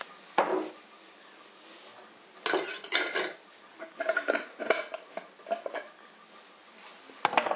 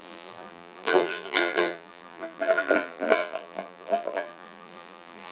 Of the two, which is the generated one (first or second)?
second